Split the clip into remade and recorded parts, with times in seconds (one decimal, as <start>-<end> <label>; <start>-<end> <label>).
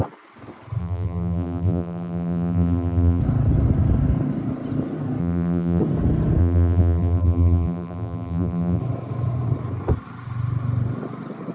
0.0-0.8 recorded; 0.8-3.2 remade; 3.2-5.2 recorded; 5.2-5.8 remade; 5.8-6.4 recorded; 6.4-8.8 remade; 8.8-11.5 recorded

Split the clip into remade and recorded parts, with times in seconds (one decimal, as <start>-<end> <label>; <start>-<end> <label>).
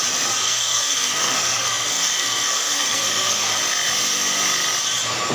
0.0-0.4 recorded; 0.4-3.6 remade; 3.6-5.3 recorded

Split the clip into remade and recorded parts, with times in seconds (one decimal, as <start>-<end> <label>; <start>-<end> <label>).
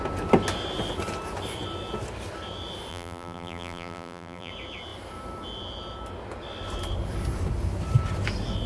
0.0-2.9 recorded; 2.9-4.5 remade; 4.5-8.7 recorded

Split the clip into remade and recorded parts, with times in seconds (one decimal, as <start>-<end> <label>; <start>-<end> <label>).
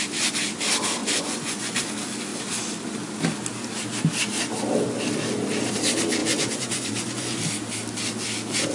0.0-1.0 recorded; 1.0-1.8 remade; 1.8-6.2 recorded; 6.2-7.4 remade; 7.4-8.7 recorded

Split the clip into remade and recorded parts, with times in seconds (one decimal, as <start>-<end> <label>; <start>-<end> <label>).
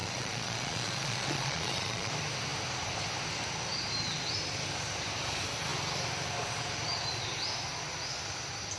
0.0-2.1 remade; 2.1-8.8 recorded